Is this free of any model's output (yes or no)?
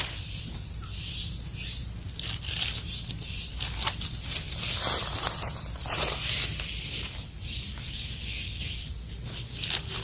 yes